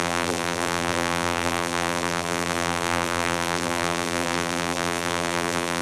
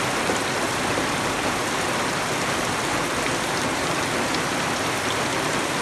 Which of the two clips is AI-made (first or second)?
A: first